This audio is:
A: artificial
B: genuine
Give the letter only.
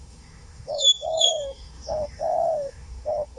A